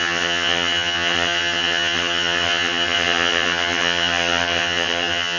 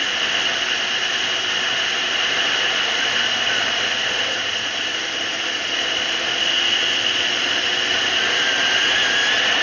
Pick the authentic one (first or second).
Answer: second